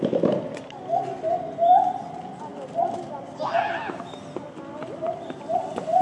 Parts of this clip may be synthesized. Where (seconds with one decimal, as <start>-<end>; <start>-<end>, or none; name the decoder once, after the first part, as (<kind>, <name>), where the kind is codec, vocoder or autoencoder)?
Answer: none